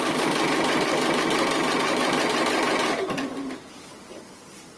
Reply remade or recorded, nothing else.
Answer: recorded